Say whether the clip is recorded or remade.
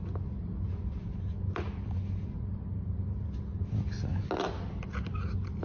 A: recorded